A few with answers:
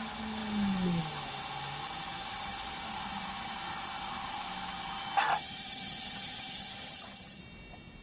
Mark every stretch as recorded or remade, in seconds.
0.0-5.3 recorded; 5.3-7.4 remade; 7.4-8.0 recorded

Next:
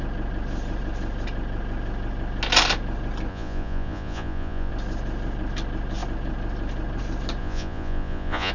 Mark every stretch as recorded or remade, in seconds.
0.0-3.3 recorded; 3.3-4.7 remade; 4.7-7.4 recorded; 7.4-8.5 remade

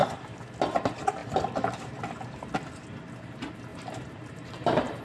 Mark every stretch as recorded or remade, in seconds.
0.0-3.7 recorded; 3.7-5.0 remade